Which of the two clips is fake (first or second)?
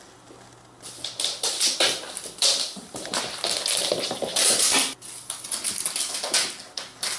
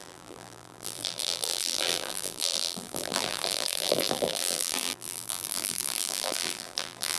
second